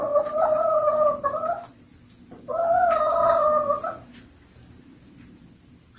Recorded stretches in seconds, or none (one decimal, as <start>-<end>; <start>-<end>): 0.0-6.0